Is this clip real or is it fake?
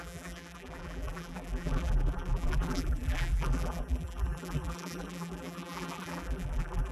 fake